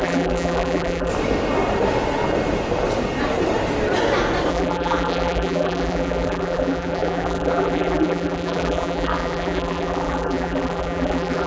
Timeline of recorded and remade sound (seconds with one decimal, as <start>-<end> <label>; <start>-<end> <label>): 0.0-1.1 remade; 1.1-4.5 recorded; 4.5-11.5 remade